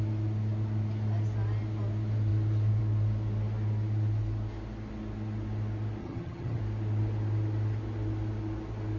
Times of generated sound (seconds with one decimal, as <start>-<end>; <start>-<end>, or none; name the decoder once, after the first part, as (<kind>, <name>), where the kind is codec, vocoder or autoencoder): 6.0-6.6 (vocoder, HiFi-GAN)